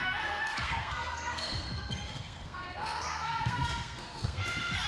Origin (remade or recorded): remade